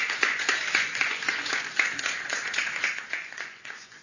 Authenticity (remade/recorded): remade